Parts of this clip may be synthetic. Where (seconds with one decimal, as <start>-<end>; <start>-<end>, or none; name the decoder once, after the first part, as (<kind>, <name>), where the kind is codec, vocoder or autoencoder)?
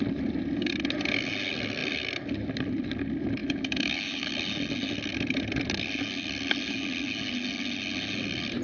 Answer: 3.4-4.3 (autoencoder, DAC-VAE)